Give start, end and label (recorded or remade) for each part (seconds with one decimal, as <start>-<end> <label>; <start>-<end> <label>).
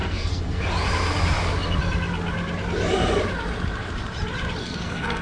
0.0-0.6 remade; 0.6-4.6 recorded; 4.6-5.2 remade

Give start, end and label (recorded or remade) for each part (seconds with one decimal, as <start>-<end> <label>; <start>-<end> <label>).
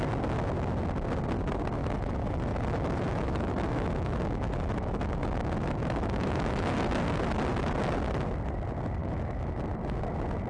0.0-1.8 recorded; 1.8-6.9 remade; 6.9-9.0 recorded; 9.0-9.6 remade; 9.6-10.5 recorded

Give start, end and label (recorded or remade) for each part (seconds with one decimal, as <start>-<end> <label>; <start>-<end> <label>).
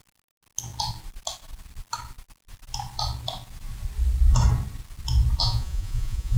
0.0-5.4 recorded; 5.4-6.4 remade